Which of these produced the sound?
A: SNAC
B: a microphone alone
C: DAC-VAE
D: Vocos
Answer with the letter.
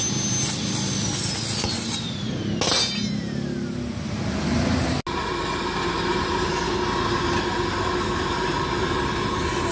B